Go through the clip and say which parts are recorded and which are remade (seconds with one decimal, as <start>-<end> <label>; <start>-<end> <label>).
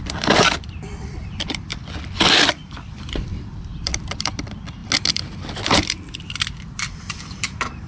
0.0-1.7 remade; 1.7-3.8 recorded; 3.8-4.8 remade; 4.8-6.3 recorded; 6.3-7.9 remade